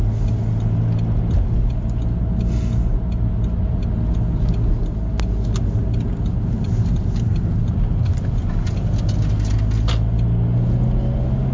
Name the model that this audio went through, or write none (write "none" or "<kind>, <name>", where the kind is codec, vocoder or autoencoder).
none